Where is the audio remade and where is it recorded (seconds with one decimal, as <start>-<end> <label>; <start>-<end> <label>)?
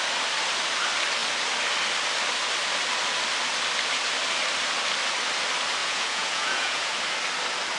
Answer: 0.0-5.8 recorded; 5.8-6.9 remade; 6.9-7.8 recorded